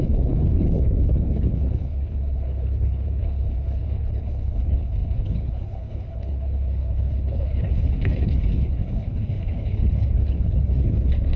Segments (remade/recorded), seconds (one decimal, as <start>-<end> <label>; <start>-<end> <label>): 0.0-11.4 remade